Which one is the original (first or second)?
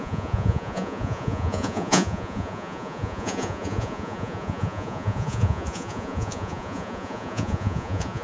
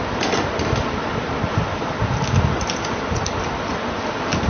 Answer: second